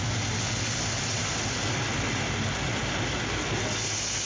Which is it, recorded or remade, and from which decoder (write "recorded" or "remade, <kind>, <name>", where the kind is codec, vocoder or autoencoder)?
recorded